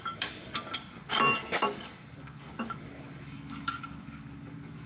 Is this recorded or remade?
remade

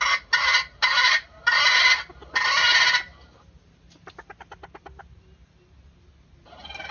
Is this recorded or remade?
recorded